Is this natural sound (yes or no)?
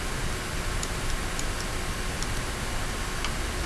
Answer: yes